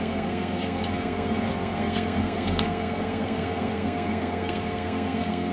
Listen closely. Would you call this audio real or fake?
fake